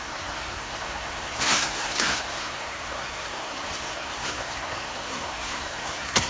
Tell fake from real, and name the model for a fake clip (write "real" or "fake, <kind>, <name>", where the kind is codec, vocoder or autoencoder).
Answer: fake, codec, SNAC